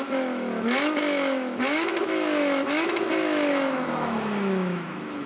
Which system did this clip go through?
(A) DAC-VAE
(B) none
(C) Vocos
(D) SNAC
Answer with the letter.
A